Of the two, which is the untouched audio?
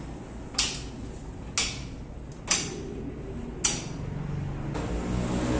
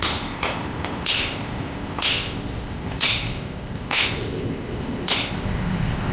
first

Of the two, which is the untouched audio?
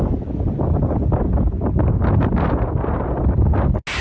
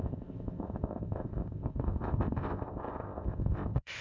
first